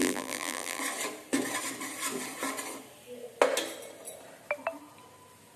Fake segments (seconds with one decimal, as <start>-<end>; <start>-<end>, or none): 0.0-0.8